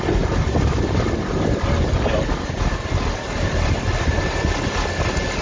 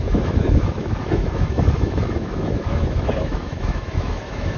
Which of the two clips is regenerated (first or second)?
second